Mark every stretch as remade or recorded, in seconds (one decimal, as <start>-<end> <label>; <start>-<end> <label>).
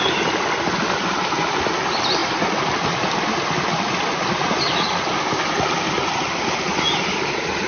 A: 0.0-7.7 recorded